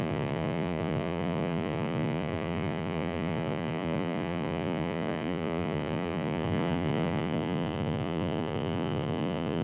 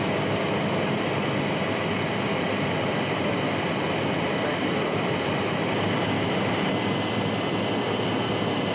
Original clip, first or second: second